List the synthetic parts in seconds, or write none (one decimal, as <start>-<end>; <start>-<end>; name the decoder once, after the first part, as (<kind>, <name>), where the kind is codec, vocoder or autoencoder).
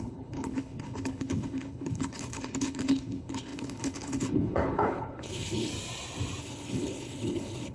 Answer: 0.0-5.7 (codec, HILCodec); 6.4-7.7